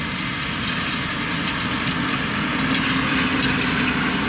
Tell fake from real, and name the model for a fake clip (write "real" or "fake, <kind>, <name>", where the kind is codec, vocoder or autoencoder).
real